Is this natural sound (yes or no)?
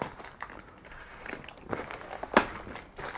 yes